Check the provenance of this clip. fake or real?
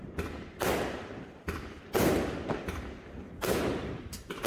real